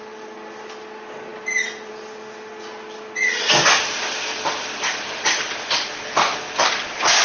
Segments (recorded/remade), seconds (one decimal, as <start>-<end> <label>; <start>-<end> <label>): 0.0-7.2 recorded